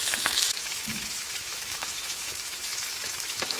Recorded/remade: remade